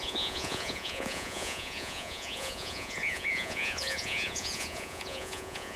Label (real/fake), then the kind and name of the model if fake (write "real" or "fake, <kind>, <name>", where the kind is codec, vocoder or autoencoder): fake, vocoder, Vocos